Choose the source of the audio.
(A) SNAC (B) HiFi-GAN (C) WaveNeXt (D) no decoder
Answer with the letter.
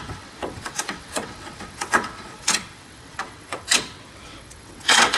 C